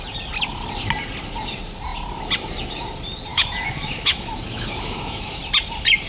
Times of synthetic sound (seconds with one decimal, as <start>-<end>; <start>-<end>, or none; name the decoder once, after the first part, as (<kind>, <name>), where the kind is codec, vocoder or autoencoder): 3.3-5.4 (autoencoder, DAC-VAE)